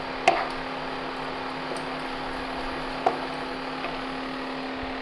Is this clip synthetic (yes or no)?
no